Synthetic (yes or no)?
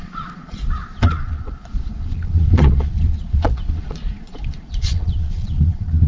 yes